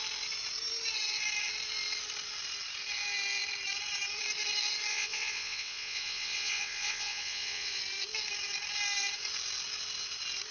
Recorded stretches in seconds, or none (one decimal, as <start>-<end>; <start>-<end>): 0.0-4.9; 7.8-10.5